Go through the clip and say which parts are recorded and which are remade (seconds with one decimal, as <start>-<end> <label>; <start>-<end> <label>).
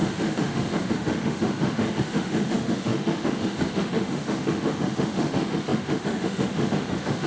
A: 0.0-7.3 remade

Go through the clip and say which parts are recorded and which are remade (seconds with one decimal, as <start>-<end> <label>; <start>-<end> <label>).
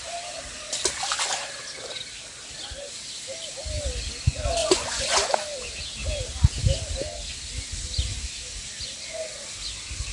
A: 0.0-4.6 recorded; 4.6-5.3 remade; 5.3-10.1 recorded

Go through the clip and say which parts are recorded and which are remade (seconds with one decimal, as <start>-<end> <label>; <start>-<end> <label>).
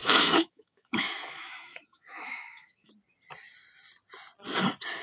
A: 0.0-2.9 remade; 2.9-5.0 recorded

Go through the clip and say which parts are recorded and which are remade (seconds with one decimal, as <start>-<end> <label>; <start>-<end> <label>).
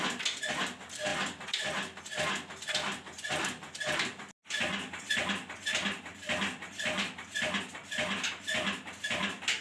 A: 0.0-9.6 recorded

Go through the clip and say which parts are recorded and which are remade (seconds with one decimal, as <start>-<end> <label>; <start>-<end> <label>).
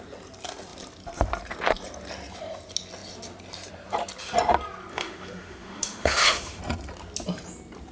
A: 0.0-4.9 recorded; 4.9-6.6 remade; 6.6-7.9 recorded